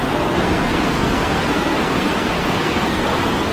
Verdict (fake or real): fake